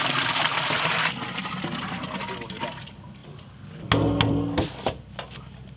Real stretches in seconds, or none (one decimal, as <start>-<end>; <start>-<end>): 0.0-5.8

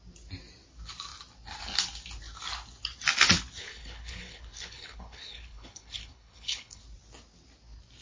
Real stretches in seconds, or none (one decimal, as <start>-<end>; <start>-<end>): 0.0-3.6; 6.8-8.0

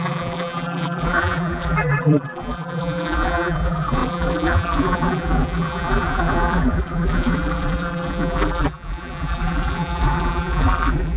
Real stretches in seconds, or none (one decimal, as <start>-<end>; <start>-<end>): none

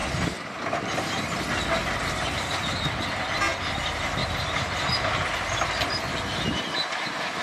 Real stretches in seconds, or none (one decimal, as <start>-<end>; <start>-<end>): 0.0-1.8; 2.6-4.2; 4.9-7.4

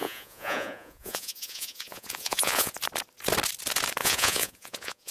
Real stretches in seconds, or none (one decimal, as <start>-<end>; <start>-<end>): 2.7-4.0